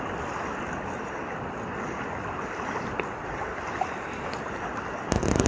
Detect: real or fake real